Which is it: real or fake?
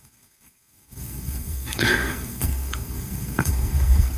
fake